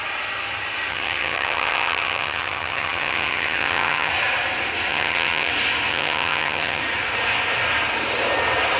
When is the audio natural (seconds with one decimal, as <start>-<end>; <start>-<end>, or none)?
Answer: 0.0-0.9; 4.1-4.9; 5.5-5.9; 6.8-8.8